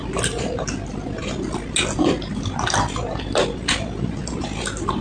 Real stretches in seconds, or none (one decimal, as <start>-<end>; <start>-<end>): 0.0-5.0